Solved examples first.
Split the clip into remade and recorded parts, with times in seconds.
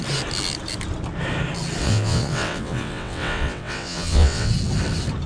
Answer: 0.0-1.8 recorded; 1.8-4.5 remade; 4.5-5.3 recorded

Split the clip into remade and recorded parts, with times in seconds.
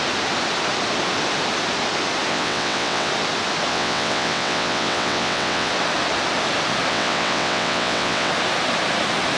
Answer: 0.0-2.3 recorded; 2.3-3.1 remade; 3.1-3.7 recorded; 3.7-5.7 remade; 5.7-6.9 recorded; 6.9-8.3 remade; 8.3-9.4 recorded